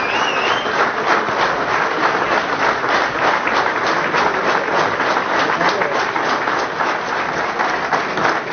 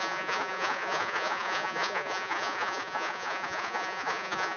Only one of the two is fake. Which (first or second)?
second